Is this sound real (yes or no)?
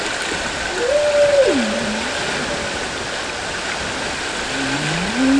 yes